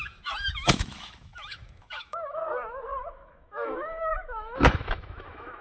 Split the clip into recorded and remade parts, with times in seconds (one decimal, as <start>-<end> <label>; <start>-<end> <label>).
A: 0.0-2.4 remade; 2.4-3.0 recorded; 3.0-5.6 remade